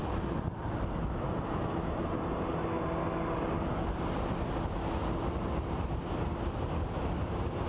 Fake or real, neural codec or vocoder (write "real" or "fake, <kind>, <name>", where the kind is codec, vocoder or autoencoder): real